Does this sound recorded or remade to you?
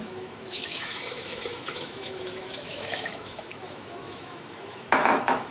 remade